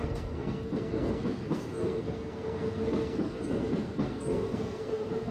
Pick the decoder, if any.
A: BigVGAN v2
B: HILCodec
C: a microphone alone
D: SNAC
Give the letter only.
D